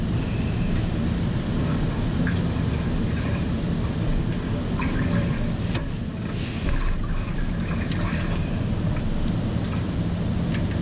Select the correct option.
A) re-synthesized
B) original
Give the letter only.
B